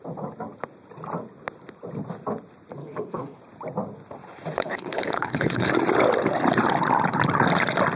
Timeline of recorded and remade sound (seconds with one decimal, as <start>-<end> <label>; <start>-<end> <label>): 0.0-2.8 recorded; 2.8-3.4 remade; 3.4-4.6 recorded; 4.6-5.7 remade; 5.7-8.0 recorded

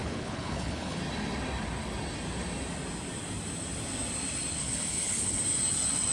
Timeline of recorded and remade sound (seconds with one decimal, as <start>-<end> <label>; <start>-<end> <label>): 0.0-1.0 remade; 1.0-4.6 recorded; 4.6-5.4 remade; 5.4-6.1 recorded

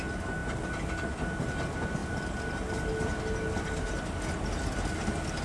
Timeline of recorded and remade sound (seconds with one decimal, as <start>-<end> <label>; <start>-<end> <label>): 0.0-5.4 recorded

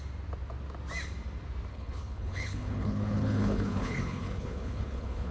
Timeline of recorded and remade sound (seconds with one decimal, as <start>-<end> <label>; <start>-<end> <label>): 0.0-1.7 recorded; 1.7-5.3 remade

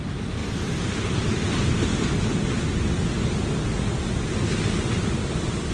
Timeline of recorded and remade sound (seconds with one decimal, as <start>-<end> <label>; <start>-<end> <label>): 0.0-5.7 recorded

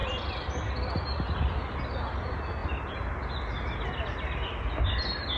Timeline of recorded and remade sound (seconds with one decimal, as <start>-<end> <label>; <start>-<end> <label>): 0.0-5.4 recorded

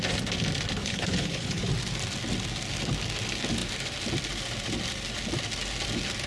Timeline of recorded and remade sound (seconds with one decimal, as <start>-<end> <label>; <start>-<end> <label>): 0.0-0.8 recorded; 0.8-1.6 remade; 1.6-6.3 recorded